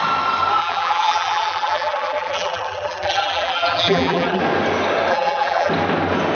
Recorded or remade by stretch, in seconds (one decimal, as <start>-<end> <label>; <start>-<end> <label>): 0.0-0.6 recorded; 0.6-4.4 remade; 4.4-5.1 recorded; 5.1-5.7 remade; 5.7-6.3 recorded